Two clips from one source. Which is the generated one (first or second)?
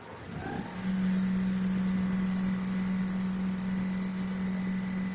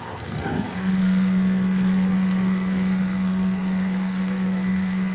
second